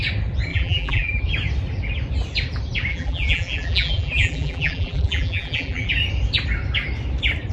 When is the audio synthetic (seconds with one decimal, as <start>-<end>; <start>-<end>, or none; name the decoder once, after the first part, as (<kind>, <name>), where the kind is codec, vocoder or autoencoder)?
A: 0.5-1.2 (vocoder, BigVGAN v2); 2.9-5.9